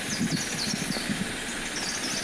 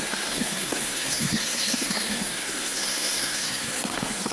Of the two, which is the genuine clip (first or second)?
first